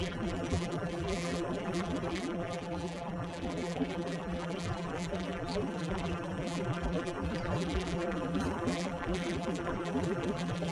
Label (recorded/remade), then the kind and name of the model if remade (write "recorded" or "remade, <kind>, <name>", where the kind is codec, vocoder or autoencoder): remade, vocoder, BigVGAN v2